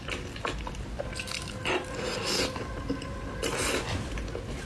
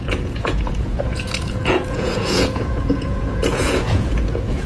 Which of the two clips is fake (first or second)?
second